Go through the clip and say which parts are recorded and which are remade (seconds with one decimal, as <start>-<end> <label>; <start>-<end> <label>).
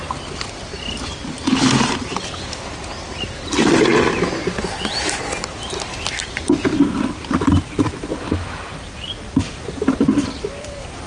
0.0-1.2 remade; 1.2-2.1 recorded; 2.1-3.9 remade; 3.9-6.5 recorded; 6.5-8.1 remade; 8.1-9.1 recorded; 9.1-11.1 remade